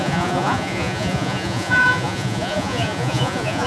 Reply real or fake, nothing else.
fake